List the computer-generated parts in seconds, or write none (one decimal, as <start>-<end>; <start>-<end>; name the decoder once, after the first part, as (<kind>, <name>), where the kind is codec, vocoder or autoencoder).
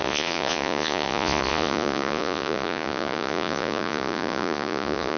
0.0-5.2 (vocoder, Vocos)